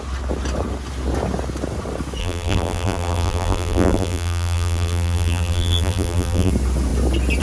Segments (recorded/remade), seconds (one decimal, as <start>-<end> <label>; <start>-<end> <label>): 0.0-2.2 recorded; 2.2-6.5 remade; 6.5-7.4 recorded